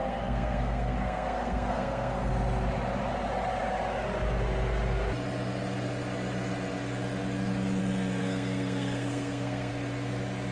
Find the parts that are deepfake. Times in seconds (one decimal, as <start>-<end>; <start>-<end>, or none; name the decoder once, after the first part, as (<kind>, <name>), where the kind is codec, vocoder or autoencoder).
0.0-2.3 (codec, SNAC); 8.2-9.7